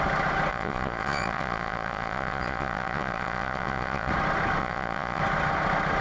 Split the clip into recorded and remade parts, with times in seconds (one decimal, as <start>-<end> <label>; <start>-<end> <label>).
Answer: 0.0-0.5 recorded; 0.5-4.1 remade; 4.1-4.6 recorded; 4.6-5.2 remade; 5.2-6.0 recorded